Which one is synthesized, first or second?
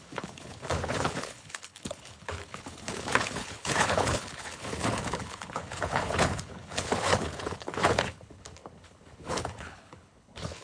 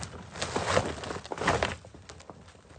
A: first